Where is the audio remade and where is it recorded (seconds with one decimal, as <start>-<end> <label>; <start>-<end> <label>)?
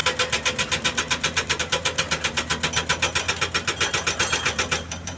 0.0-2.5 remade; 2.5-4.2 recorded; 4.2-5.2 remade